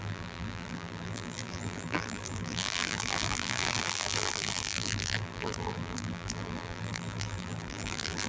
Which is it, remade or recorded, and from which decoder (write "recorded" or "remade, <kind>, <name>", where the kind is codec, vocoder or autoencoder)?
remade, vocoder, BigVGAN v2